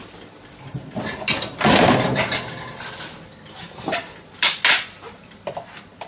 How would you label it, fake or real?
real